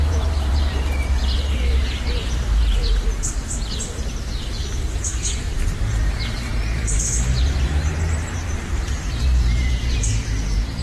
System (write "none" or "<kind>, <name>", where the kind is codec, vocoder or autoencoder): vocoder, BigVGAN v2